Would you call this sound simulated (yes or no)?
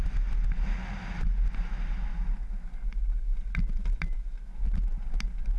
no